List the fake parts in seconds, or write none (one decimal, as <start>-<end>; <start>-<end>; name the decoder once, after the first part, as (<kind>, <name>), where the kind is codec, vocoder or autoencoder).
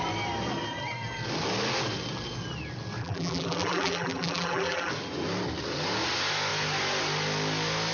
3.0-4.9 (vocoder, BigVGAN v2)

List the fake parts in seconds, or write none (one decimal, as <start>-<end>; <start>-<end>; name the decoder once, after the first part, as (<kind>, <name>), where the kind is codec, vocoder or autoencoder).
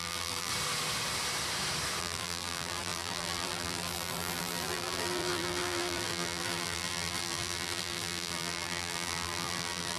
0.0-0.5 (vocoder, BigVGAN v2); 2.0-10.0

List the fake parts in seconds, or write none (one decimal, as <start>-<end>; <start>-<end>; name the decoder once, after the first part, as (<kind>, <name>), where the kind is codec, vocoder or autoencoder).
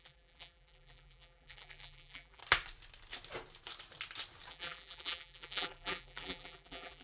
0.0-2.4 (vocoder, BigVGAN v2); 4.5-7.0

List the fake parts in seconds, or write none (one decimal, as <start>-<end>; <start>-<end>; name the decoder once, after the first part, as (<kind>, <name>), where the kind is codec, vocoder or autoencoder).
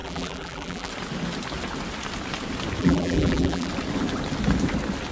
0.0-0.9 (vocoder, BigVGAN v2); 2.8-3.7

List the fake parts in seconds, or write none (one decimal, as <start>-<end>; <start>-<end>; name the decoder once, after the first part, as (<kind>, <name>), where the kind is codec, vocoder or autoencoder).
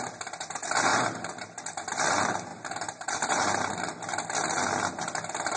0.9-1.6 (vocoder, BigVGAN v2); 2.5-3.7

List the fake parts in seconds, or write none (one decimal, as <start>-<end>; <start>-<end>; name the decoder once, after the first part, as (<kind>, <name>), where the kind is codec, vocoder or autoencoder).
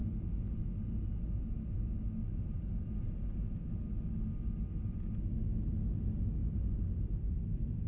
6.4-7.9 (vocoder, BigVGAN v2)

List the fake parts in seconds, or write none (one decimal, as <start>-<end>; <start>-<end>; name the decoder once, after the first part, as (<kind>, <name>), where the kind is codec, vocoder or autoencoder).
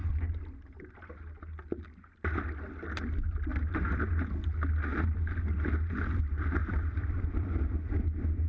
3.5-4.0 (vocoder, BigVGAN v2); 6.6-7.9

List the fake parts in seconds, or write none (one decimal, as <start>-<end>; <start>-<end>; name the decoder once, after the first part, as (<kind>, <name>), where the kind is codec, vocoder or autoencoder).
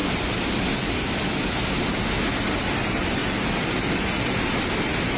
0.0-1.0 (vocoder, BigVGAN v2)